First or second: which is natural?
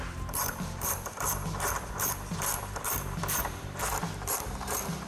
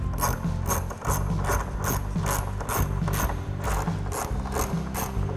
second